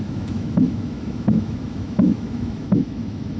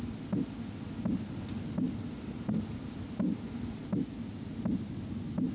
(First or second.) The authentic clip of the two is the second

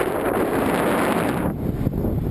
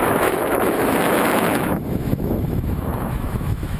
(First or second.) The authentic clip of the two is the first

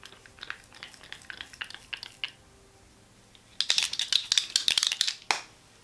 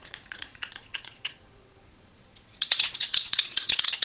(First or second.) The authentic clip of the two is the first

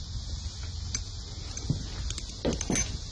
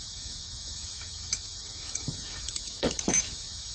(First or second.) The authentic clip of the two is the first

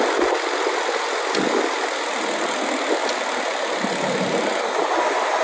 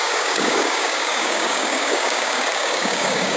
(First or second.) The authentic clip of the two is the first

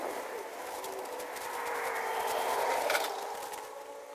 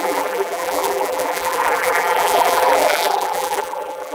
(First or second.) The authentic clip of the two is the first